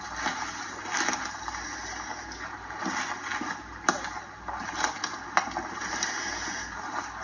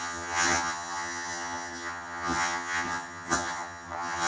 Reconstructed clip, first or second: second